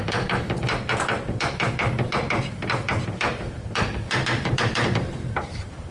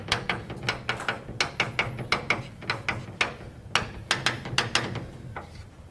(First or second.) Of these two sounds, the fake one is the first